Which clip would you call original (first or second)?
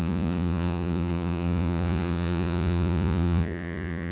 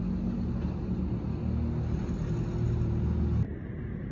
second